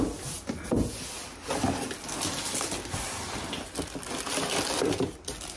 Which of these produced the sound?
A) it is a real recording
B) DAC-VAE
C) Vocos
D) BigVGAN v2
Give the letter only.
A